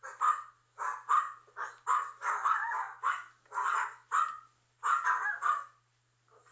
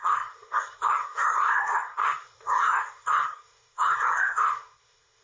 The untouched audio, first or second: first